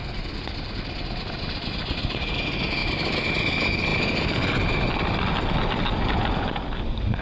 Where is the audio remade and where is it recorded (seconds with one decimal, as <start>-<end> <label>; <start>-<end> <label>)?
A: 0.0-7.2 recorded